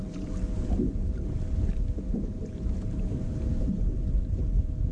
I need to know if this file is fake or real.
fake